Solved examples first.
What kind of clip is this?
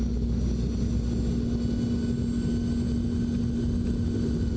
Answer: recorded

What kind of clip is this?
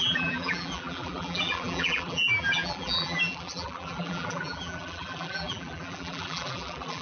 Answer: remade